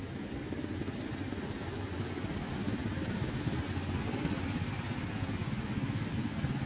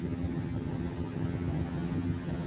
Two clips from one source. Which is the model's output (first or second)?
second